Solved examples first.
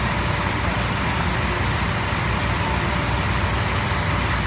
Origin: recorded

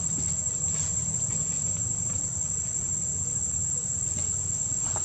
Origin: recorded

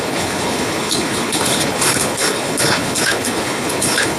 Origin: remade